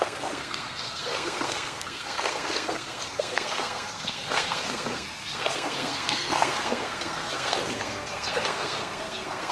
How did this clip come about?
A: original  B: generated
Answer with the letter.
B